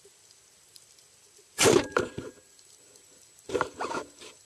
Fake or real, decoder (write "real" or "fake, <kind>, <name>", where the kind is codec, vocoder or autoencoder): fake, vocoder, BigVGAN v2